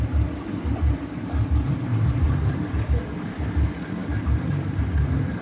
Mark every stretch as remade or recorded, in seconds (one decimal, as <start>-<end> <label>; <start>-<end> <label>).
0.0-1.9 recorded; 1.9-2.9 remade; 2.9-4.0 recorded; 4.0-4.8 remade; 4.8-5.4 recorded